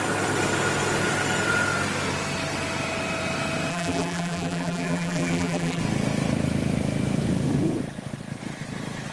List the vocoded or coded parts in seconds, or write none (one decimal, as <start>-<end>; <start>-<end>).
3.7-5.8